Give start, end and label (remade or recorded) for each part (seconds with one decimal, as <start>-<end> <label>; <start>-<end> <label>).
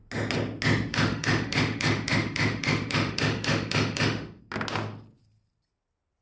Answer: 0.0-0.9 recorded; 0.9-4.4 remade; 4.4-6.2 recorded